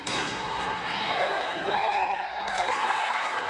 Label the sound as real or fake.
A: fake